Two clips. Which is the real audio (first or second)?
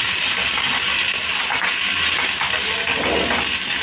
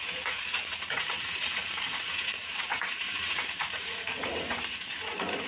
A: first